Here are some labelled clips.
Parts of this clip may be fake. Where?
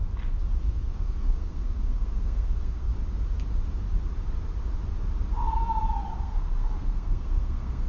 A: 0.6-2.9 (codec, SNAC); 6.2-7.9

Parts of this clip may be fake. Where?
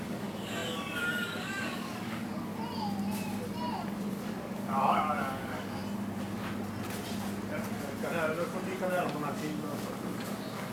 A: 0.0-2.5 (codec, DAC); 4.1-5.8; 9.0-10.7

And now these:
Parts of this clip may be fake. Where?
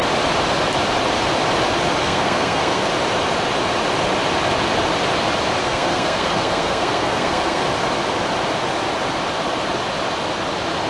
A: 2.0-2.9 (codec, SNAC); 5.6-7.6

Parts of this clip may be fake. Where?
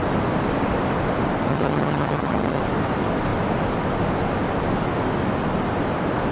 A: 1.5-2.6 (vocoder, HiFi-GAN)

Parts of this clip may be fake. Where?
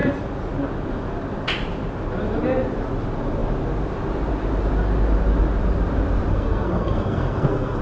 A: 6.3-7.8 (codec, SNAC)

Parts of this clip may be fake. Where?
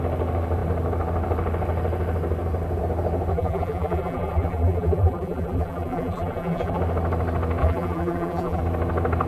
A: 3.3-6.8 (vocoder, BigVGAN v2); 7.6-8.6